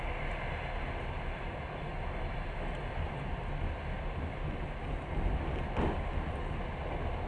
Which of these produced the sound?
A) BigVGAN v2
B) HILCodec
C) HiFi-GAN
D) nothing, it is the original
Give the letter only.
D